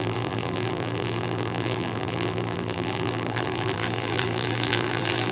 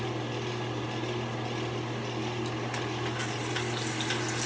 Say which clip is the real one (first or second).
second